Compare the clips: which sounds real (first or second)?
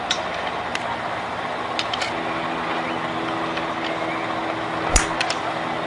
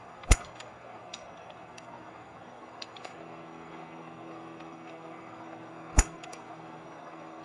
first